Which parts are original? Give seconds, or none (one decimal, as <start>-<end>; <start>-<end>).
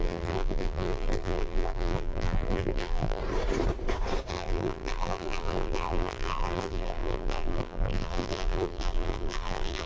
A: 3.2-4.3